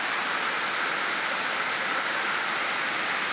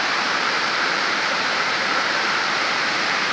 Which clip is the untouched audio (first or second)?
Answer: first